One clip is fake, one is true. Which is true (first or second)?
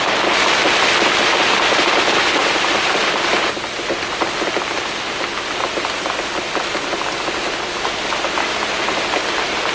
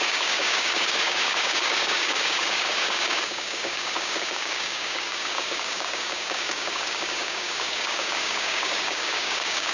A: first